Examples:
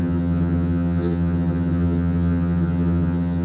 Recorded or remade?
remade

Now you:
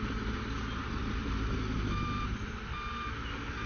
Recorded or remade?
recorded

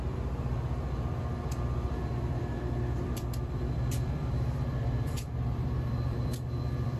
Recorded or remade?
remade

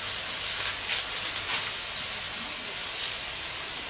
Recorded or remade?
recorded